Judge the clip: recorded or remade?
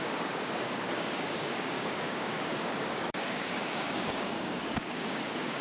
remade